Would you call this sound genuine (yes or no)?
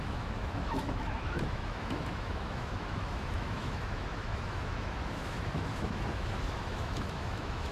no